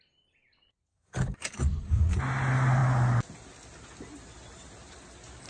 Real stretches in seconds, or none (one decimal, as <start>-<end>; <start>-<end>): 0.0-0.9; 2.2-5.5